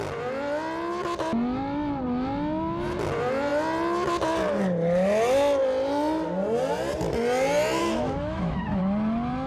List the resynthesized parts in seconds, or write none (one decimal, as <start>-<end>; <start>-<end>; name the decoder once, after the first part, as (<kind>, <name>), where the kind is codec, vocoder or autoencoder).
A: 7.8-8.8 (autoencoder, DAC-VAE)